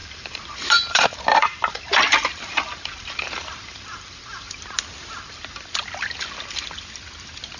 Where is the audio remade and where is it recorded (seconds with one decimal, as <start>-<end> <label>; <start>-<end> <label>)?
0.0-4.6 remade; 4.6-7.6 recorded